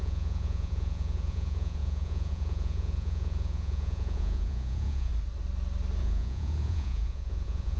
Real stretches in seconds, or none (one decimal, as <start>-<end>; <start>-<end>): 5.1-6.0